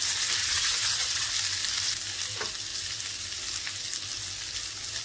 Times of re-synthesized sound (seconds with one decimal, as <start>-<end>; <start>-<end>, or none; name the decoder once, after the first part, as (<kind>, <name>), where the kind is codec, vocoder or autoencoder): 0.4-1.3 (vocoder, Vocos)